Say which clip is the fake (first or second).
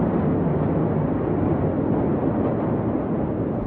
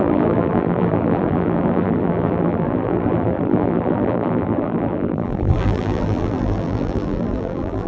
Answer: second